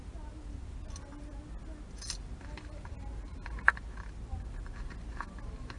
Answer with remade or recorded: recorded